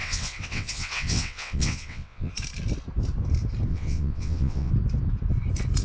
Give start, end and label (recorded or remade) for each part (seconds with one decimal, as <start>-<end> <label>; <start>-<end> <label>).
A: 0.0-2.3 remade; 2.3-3.7 recorded; 3.7-4.7 remade; 4.7-5.8 recorded